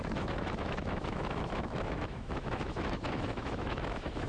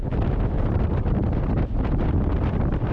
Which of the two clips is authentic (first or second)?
second